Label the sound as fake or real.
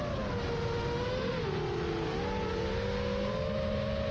real